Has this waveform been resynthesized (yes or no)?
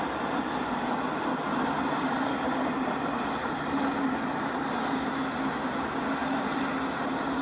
no